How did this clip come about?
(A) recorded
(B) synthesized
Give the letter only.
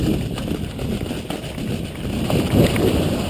A